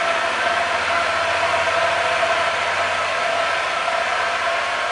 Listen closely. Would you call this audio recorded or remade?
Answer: recorded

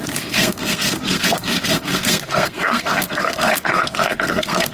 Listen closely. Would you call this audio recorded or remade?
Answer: remade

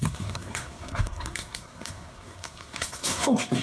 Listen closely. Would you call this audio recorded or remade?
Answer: remade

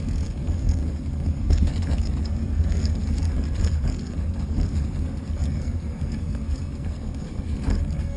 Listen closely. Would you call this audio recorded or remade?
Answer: remade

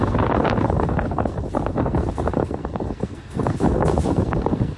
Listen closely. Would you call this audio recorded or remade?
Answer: remade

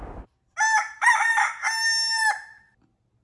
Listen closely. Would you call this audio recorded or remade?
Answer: recorded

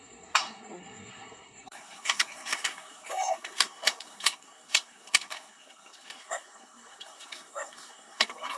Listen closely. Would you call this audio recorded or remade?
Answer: remade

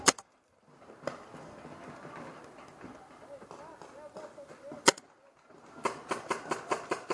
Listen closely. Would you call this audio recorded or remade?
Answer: recorded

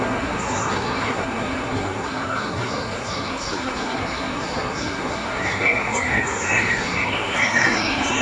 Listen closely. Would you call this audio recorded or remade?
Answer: remade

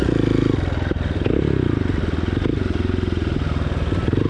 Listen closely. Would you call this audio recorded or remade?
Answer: recorded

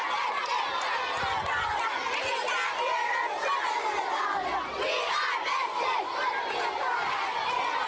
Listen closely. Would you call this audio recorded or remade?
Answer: recorded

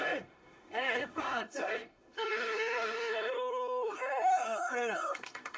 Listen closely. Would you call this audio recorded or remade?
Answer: remade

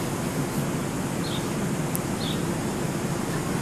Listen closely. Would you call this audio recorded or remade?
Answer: recorded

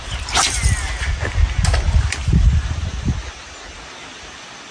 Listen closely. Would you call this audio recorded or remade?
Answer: recorded